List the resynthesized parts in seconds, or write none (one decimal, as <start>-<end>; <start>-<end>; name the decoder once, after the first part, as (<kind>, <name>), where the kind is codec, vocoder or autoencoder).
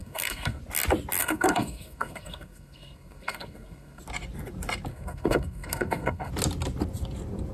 0.0-0.6 (codec, SNAC); 1.2-4.0; 4.9-6.3